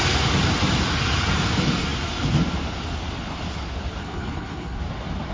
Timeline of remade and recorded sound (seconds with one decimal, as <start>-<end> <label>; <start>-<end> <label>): 0.0-4.0 recorded; 4.0-4.8 remade; 4.8-5.3 recorded